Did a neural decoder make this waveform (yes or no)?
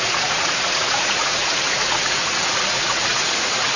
yes